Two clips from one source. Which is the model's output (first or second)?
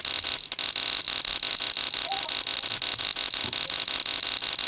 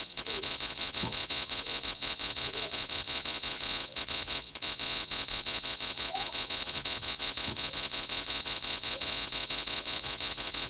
second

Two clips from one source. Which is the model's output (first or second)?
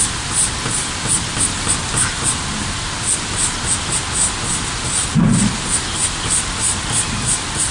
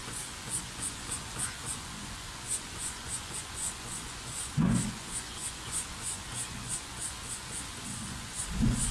second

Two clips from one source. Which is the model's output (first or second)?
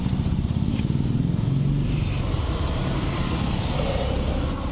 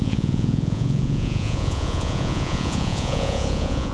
second